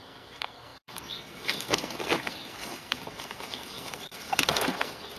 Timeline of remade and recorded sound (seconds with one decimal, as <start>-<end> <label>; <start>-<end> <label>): 0.0-5.2 remade

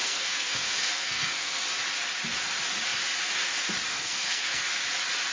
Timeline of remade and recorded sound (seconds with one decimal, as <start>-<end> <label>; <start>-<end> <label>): 0.0-1.6 remade; 1.6-3.9 recorded; 3.9-4.7 remade; 4.7-5.3 recorded

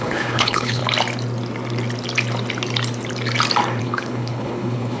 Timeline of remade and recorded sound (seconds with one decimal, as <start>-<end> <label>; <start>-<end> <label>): 0.0-0.8 remade; 0.8-3.8 recorded; 3.8-5.0 remade

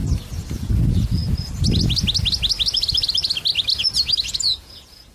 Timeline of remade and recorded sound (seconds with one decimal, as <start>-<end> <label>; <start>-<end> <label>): 0.0-0.5 recorded; 0.5-1.2 remade; 1.2-4.3 recorded; 4.3-5.1 remade

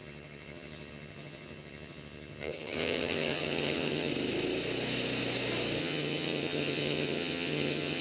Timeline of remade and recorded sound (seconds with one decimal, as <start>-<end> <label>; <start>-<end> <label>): 0.0-4.1 remade; 4.1-5.8 recorded; 5.8-8.0 remade

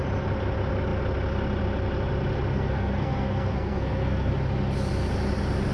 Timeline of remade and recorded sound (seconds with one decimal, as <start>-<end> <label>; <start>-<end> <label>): 0.0-2.5 recorded; 2.5-4.3 remade; 4.3-5.7 recorded

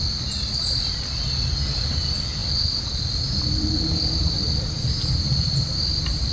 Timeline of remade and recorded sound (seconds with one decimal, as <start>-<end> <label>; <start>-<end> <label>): 0.0-6.3 recorded

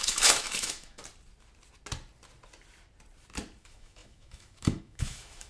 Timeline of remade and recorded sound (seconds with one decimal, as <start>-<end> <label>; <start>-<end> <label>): 0.0-1.0 remade; 1.0-3.6 recorded; 3.6-5.5 remade